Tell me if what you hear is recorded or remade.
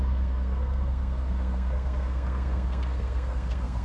remade